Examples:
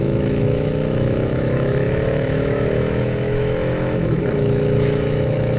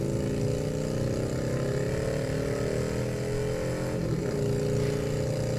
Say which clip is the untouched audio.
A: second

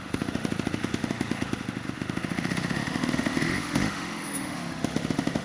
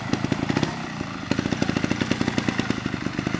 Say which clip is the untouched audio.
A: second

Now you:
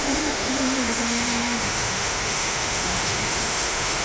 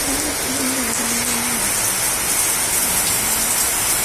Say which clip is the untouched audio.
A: second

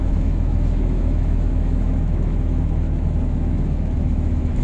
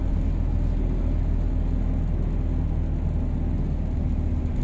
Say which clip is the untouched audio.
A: second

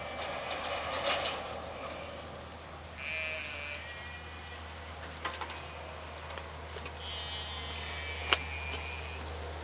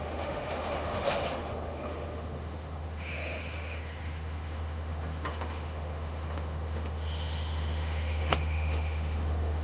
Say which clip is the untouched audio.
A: first